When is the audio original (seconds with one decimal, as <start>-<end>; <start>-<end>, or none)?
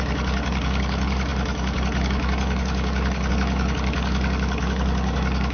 none